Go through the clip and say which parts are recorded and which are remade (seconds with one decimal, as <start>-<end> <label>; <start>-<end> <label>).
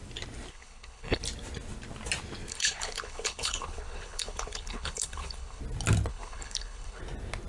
0.0-0.5 recorded; 0.5-1.2 remade; 1.2-2.5 recorded; 2.5-5.6 remade; 5.6-6.1 recorded; 6.1-7.0 remade; 7.0-7.5 recorded